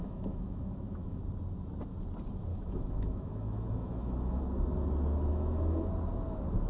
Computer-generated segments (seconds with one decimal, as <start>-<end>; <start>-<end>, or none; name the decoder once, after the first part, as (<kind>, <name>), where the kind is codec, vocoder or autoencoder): 0.0-1.2 (autoencoder, DAC-VAE); 2.5-4.4; 5.3-5.9